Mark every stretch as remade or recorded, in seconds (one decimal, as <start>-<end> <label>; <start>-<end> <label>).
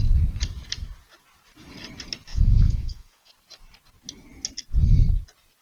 0.0-2.3 recorded; 2.3-3.3 remade; 3.3-5.6 recorded